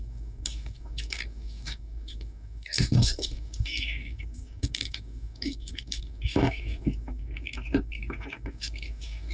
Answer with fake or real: fake